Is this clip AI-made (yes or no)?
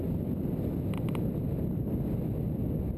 no